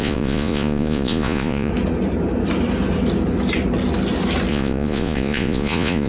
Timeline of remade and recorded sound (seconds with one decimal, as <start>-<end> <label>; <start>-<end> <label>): 0.0-1.7 remade; 1.7-4.5 recorded; 4.5-6.1 remade